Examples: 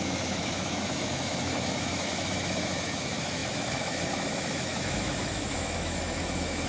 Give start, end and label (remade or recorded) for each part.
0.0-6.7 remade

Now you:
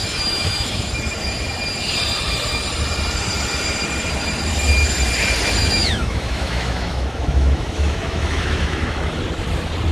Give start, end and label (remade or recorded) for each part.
0.0-0.9 remade; 0.9-5.6 recorded; 5.6-9.2 remade; 9.2-9.9 recorded